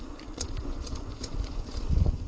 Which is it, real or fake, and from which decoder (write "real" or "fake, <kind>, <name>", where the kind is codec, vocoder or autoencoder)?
fake, vocoder, Vocos